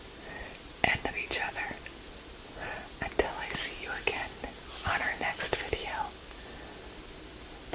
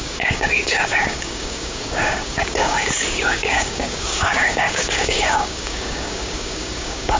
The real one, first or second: first